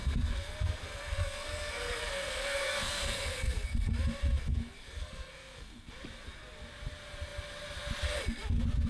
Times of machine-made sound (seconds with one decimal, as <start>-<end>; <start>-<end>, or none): 0.0-3.9; 4.4-5.9